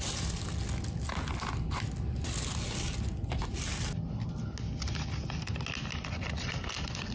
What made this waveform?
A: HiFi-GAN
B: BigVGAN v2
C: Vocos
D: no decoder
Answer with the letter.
D